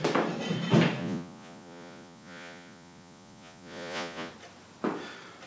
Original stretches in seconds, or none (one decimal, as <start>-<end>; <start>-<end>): 0.0-1.0; 4.3-5.5